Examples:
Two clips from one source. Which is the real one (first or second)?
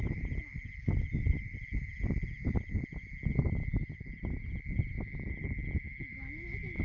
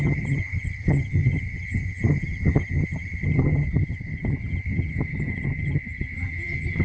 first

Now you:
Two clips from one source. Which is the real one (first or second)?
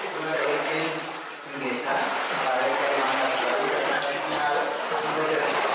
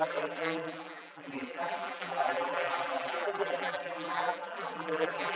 first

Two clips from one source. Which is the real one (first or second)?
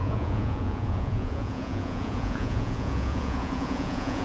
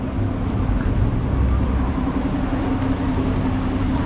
second